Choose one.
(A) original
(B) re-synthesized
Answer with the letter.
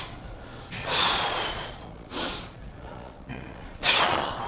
B